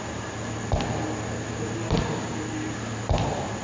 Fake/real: real